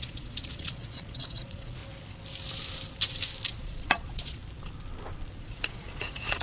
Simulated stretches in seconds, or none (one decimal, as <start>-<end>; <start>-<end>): 0.0-1.8; 3.5-4.4; 5.4-6.4